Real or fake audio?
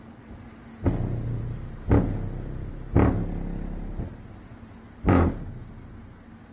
real